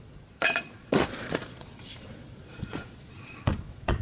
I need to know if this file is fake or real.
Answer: fake